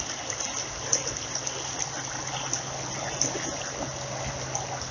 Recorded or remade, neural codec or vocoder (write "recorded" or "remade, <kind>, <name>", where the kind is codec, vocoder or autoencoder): recorded